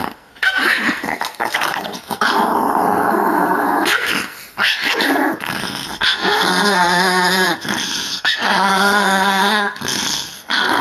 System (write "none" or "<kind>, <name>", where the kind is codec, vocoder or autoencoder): codec, SNAC